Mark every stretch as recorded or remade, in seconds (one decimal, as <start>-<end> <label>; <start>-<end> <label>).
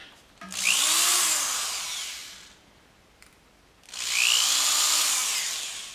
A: 0.0-5.9 recorded